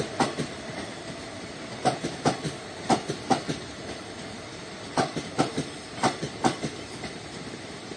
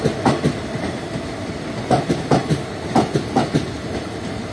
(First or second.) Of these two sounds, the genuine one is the second